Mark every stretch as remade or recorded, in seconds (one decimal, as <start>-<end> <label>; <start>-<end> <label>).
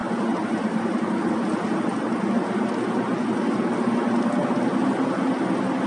0.0-1.3 remade; 1.3-5.9 recorded